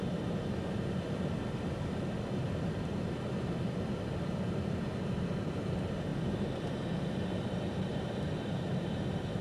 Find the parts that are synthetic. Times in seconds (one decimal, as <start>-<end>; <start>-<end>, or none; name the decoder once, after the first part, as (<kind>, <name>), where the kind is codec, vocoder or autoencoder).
0.0-9.4 (vocoder, BigVGAN v2)